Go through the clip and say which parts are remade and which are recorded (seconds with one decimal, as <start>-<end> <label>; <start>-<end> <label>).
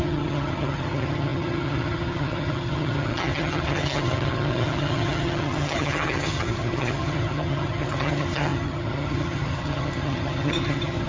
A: 0.0-11.1 remade